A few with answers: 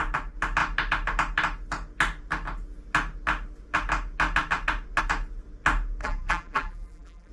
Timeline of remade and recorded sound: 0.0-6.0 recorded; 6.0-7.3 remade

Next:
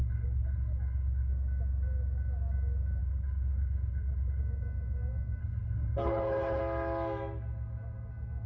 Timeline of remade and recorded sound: 0.0-1.3 remade; 1.3-3.0 recorded; 3.0-4.4 remade; 4.4-5.4 recorded; 5.4-6.6 remade; 6.6-8.5 recorded

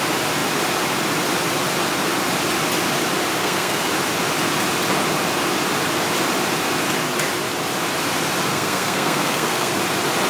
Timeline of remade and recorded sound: 0.0-3.4 recorded; 3.4-3.9 remade; 3.9-8.5 recorded; 8.5-9.8 remade; 9.8-10.3 recorded